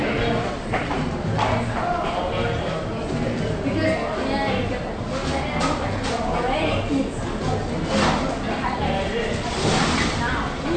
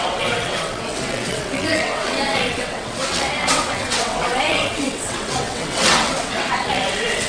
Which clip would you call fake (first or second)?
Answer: second